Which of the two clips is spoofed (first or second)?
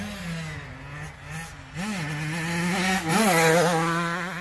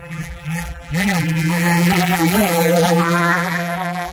second